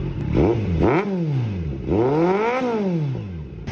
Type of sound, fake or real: real